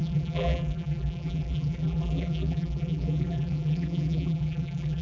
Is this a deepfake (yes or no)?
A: yes